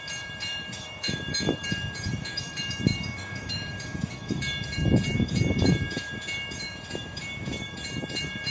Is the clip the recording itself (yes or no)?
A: no